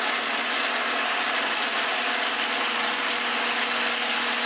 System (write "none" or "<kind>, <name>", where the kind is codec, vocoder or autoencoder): none